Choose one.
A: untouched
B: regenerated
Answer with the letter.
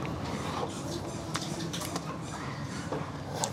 B